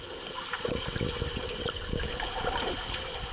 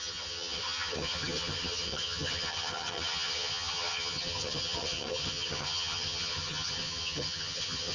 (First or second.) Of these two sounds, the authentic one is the first